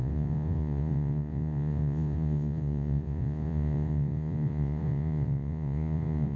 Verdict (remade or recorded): remade